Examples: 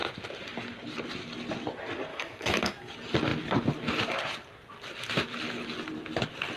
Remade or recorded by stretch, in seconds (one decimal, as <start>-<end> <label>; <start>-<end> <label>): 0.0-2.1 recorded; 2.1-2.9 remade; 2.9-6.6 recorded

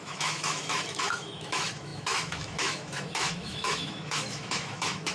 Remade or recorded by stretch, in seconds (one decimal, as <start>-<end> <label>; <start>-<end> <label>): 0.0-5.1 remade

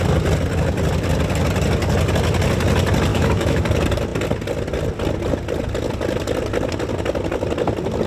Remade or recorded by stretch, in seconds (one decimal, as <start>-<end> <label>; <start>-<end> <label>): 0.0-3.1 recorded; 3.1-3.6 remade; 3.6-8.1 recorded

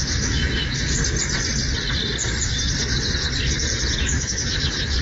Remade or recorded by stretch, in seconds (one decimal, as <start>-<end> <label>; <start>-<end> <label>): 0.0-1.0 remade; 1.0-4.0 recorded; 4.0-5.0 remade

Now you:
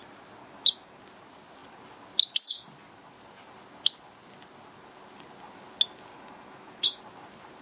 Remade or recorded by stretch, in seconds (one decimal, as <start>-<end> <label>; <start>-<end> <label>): 0.0-0.4 recorded; 0.4-1.0 remade; 1.0-6.1 recorded; 6.1-7.0 remade; 7.0-7.6 recorded

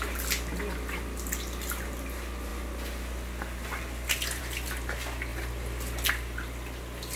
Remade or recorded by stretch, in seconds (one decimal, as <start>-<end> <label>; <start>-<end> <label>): 0.0-7.2 recorded

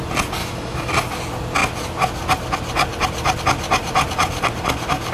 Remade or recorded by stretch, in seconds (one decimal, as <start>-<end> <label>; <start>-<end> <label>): 0.0-0.4 recorded; 0.4-0.9 remade; 0.9-5.1 recorded

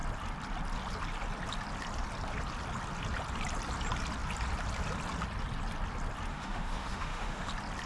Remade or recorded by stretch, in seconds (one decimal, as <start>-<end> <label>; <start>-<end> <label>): 0.0-6.3 recorded; 6.3-7.5 remade; 7.5-7.9 recorded